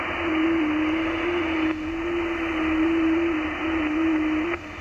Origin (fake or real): real